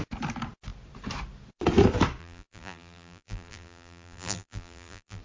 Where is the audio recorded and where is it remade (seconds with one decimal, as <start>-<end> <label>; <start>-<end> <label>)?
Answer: 0.0-2.2 recorded; 2.2-5.2 remade